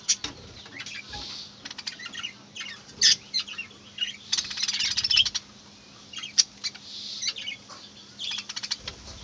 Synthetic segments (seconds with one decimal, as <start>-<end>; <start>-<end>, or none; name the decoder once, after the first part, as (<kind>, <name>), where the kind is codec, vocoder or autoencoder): none